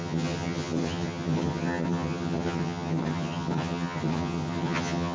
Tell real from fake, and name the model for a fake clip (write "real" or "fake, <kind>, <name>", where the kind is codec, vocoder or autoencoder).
fake, vocoder, HiFi-GAN